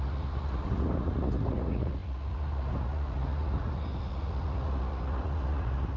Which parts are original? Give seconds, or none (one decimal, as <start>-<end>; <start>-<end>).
none